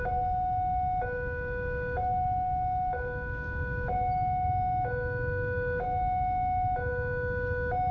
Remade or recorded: recorded